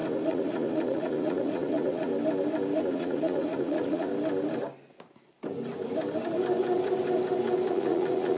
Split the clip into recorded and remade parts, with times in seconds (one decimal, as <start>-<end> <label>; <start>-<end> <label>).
0.0-2.1 remade; 2.1-2.8 recorded; 2.8-4.1 remade; 4.1-7.7 recorded; 7.7-8.4 remade